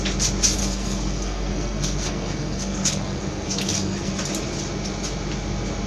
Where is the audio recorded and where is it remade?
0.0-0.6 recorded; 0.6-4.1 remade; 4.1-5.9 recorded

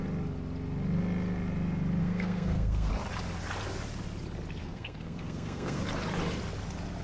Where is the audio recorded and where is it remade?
0.0-2.0 recorded; 2.0-2.9 remade; 2.9-4.6 recorded; 4.6-5.8 remade; 5.8-7.0 recorded

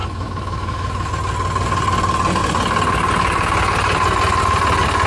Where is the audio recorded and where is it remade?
0.0-1.1 remade; 1.1-5.1 recorded

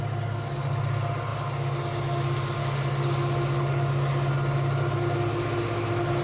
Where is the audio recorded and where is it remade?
0.0-6.2 recorded

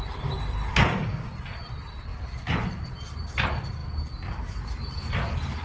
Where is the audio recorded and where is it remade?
0.0-0.7 recorded; 0.7-1.3 remade; 1.3-5.6 recorded

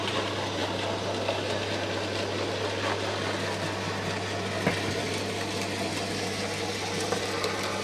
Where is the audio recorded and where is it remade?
0.0-7.8 remade

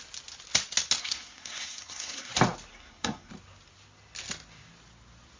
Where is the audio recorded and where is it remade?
0.0-1.0 recorded; 1.0-2.3 remade; 2.3-2.7 recorded; 2.7-3.3 remade; 3.3-5.4 recorded